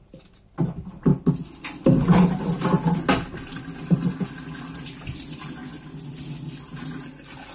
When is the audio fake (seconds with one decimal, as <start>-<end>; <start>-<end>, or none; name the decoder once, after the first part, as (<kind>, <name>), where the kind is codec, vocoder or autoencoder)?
none